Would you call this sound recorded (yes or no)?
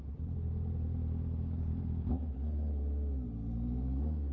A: yes